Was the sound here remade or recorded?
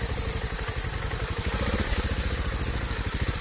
recorded